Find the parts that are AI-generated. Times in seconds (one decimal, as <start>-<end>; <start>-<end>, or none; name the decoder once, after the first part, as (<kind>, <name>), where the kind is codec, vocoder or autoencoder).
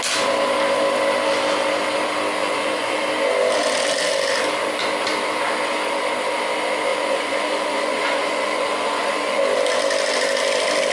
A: 2.4-3.0 (vocoder, Vocos); 6.9-9.4